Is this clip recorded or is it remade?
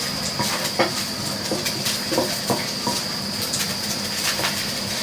remade